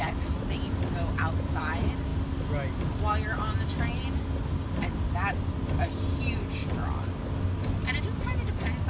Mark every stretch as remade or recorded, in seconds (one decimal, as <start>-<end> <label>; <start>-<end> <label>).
0.0-8.9 recorded